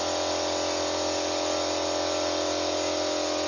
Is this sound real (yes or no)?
yes